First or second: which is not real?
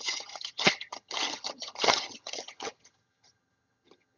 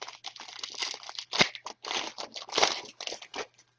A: first